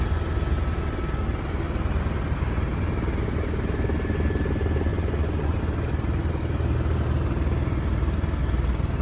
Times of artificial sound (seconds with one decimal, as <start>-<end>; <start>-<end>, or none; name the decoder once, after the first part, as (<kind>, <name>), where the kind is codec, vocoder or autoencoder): 4.9-5.6 (vocoder, Vocos)